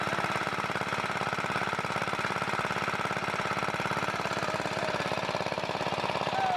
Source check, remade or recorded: recorded